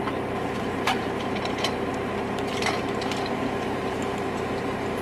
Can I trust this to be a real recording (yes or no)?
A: no